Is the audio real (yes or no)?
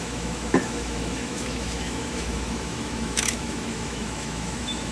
no